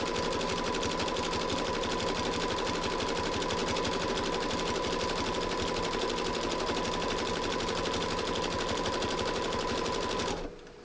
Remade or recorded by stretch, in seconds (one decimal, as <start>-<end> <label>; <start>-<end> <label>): 0.0-10.8 recorded